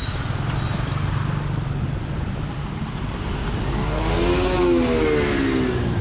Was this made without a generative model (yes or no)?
yes